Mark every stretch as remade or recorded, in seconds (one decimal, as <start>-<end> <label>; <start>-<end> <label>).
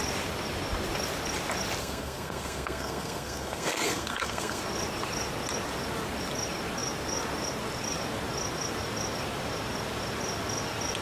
0.0-1.8 recorded; 1.8-4.6 remade; 4.6-11.0 recorded